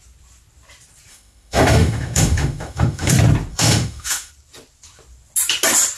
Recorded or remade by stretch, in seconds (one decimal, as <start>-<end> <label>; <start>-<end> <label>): 0.0-1.1 recorded; 1.1-3.1 remade; 3.1-3.5 recorded; 3.5-4.3 remade; 4.3-6.0 recorded